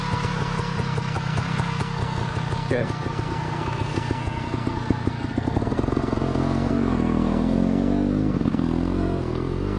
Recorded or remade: remade